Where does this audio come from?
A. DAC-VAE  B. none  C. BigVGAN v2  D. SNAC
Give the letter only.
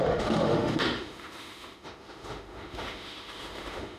A